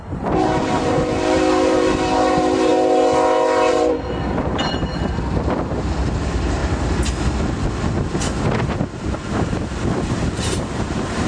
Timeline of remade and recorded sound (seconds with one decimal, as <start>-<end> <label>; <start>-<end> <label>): 0.0-2.7 remade; 2.7-3.7 recorded; 3.7-6.6 remade; 6.6-10.1 recorded; 10.1-11.3 remade